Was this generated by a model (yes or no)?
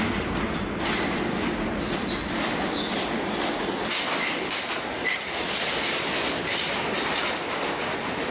no